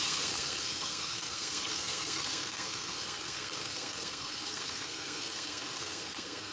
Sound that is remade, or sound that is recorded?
remade